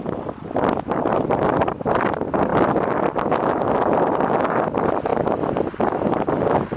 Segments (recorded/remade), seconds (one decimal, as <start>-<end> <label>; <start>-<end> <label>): 0.0-2.5 remade; 2.5-3.6 recorded; 3.6-6.8 remade